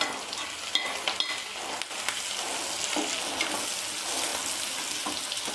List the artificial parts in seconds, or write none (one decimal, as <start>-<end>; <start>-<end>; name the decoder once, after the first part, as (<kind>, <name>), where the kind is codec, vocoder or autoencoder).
none